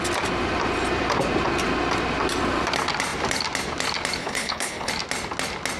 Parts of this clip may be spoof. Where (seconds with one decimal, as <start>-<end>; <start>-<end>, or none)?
4.2-4.9